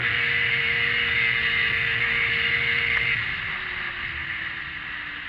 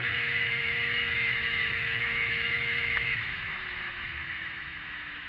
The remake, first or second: second